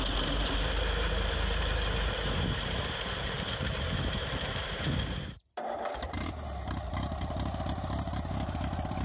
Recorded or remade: remade